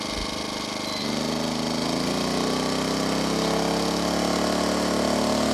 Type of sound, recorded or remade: recorded